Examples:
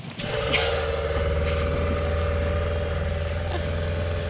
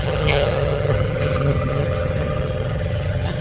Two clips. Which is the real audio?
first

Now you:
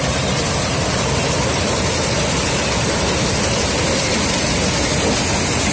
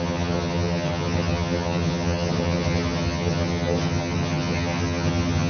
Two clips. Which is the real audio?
first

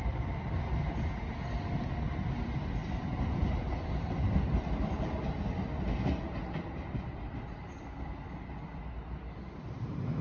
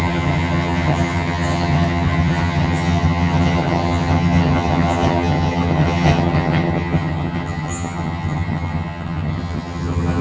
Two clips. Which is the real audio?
first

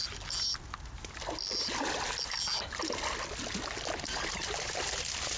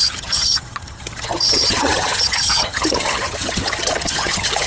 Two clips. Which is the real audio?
first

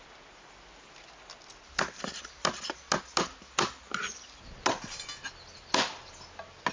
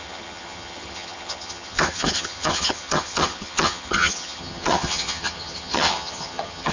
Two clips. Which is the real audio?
first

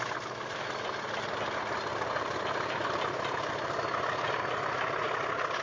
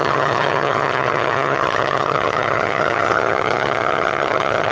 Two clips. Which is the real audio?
first